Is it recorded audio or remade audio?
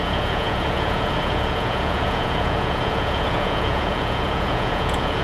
remade